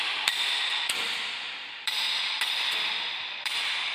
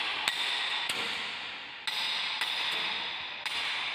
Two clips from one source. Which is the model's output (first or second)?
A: first